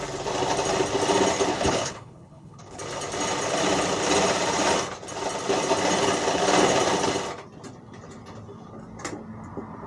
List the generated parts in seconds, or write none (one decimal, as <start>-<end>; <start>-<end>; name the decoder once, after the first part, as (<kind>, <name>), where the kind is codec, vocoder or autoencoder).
1.5-2.8 (codec, HILCodec)